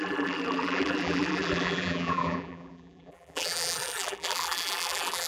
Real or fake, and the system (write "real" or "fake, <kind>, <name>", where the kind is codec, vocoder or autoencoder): fake, vocoder, BigVGAN v2